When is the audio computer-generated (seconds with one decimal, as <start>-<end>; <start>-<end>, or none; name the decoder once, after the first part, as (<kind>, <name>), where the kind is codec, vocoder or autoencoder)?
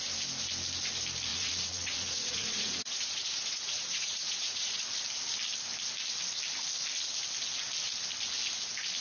1.3-4.8 (vocoder, Vocos)